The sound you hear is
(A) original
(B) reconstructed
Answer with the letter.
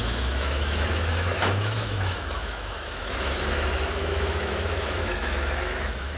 B